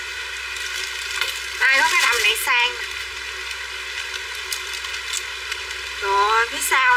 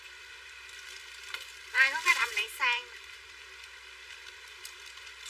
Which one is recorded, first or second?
first